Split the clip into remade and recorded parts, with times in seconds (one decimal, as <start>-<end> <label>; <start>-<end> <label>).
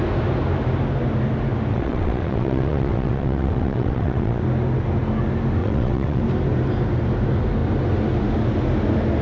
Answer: 0.0-1.7 recorded; 1.7-4.4 remade; 4.4-5.6 recorded; 5.6-6.2 remade; 6.2-9.2 recorded